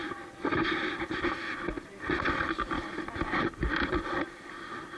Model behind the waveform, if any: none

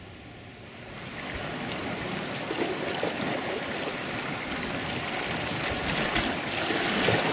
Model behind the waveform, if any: none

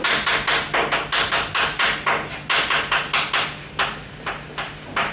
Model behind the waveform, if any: none